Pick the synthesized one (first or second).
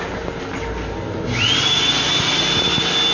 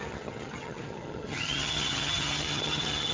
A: second